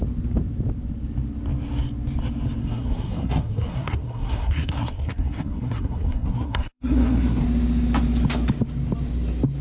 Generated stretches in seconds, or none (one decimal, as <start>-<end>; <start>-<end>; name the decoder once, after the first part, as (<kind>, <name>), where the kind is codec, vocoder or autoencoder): 2.6-7.4 (codec, SNAC)